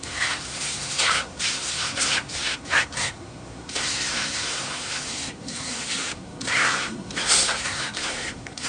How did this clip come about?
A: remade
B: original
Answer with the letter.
A